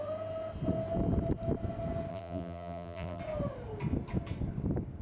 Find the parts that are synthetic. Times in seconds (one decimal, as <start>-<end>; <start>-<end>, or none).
2.1-3.2

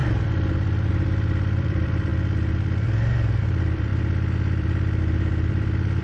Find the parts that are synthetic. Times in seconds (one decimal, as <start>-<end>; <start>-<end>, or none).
0.9-2.1; 3.4-6.0

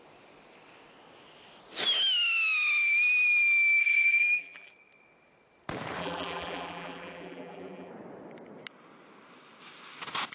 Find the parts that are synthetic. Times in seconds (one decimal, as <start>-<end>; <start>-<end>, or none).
3.8-4.7; 6.0-7.9

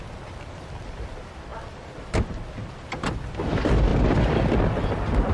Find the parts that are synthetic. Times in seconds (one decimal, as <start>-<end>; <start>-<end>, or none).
0.0-5.3

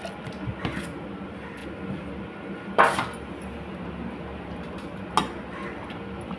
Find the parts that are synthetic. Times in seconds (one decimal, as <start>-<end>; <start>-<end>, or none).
none